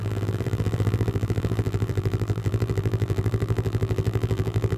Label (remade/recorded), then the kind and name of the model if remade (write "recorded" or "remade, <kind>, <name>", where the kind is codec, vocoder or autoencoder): remade, vocoder, BigVGAN v2